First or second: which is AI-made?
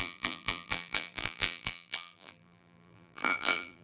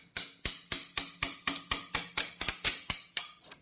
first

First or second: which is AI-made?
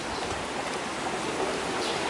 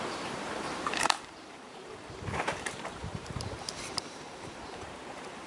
second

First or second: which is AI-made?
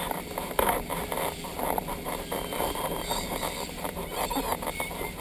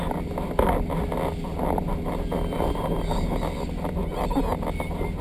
first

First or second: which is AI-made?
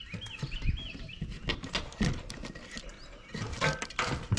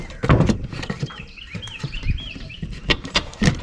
second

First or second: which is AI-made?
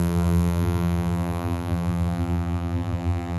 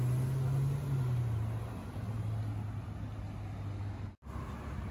first